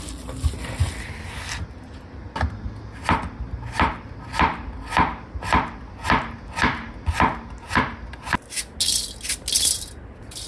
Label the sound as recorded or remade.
recorded